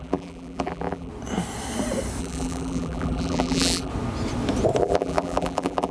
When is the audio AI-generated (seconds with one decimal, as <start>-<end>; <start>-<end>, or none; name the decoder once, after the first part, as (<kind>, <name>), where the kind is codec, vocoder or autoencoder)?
0.0-1.1 (vocoder, BigVGAN v2); 2.2-3.9; 4.8-5.9